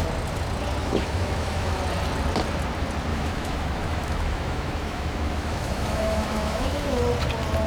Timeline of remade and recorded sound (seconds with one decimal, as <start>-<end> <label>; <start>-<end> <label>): 0.0-0.8 recorded; 0.8-1.8 remade; 1.8-3.1 recorded; 3.1-7.0 remade; 7.0-7.7 recorded